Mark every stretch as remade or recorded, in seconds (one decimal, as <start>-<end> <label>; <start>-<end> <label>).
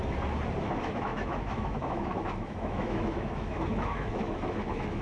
0.0-0.6 recorded; 0.6-5.0 remade